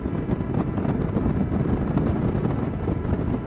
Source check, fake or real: real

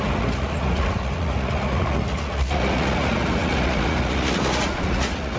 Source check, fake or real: fake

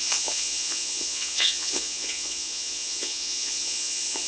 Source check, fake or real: fake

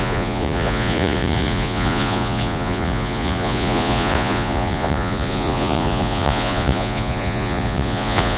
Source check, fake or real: fake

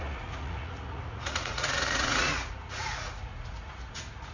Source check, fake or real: fake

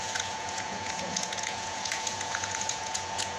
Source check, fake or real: fake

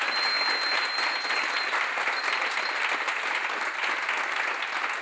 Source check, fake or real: real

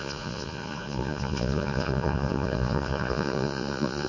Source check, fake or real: fake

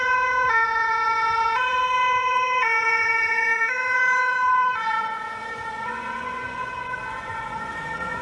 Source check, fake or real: fake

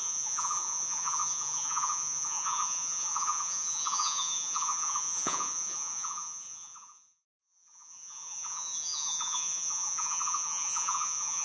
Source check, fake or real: fake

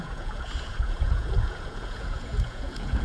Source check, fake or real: fake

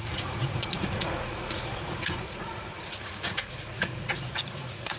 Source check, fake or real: fake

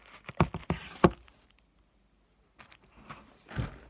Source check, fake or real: real